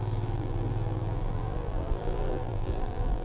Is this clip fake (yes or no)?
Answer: yes